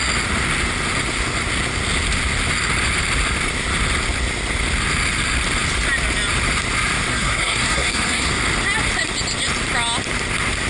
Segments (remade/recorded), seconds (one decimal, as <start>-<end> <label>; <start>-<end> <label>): 0.0-7.1 recorded; 7.1-8.3 remade; 8.3-10.7 recorded